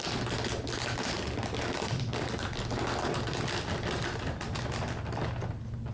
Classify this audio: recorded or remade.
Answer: recorded